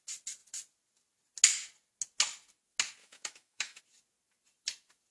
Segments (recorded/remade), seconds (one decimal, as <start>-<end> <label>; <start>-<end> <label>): 0.0-3.0 recorded; 3.0-3.8 remade; 3.8-5.1 recorded